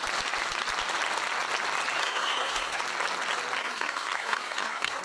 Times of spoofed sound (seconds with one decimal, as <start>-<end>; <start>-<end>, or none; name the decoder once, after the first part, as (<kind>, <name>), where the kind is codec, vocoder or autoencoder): 2.0-2.8 (codec, SNAC); 3.6-5.0